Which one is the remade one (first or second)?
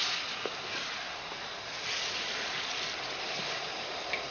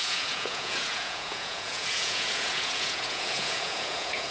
second